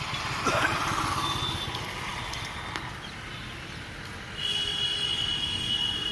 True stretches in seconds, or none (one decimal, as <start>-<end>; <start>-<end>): 0.0-6.1